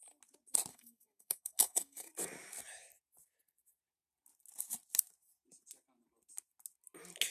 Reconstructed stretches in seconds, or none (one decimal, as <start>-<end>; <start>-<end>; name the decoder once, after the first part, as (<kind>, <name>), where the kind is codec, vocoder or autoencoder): 0.7-2.1 (codec, SNAC)